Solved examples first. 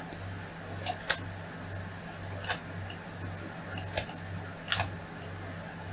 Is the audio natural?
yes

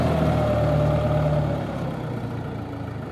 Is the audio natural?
yes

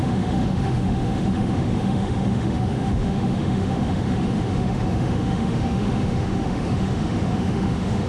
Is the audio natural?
no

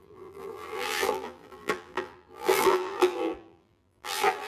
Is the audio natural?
no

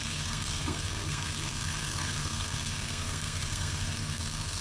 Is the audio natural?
no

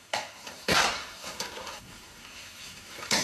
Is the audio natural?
no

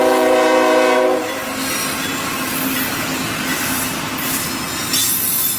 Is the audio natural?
yes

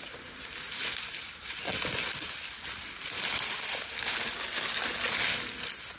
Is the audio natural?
yes